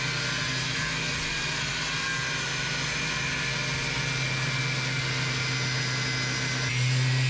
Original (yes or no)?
yes